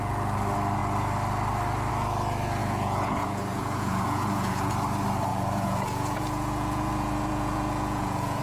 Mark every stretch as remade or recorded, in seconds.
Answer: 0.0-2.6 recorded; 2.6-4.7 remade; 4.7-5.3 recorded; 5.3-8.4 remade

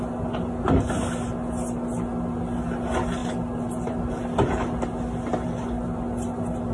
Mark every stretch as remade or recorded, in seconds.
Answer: 0.0-6.7 recorded